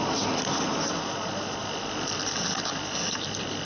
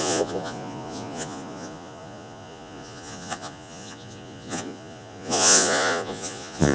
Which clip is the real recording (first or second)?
first